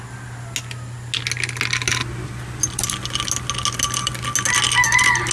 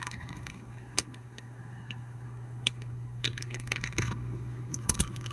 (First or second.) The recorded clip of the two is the first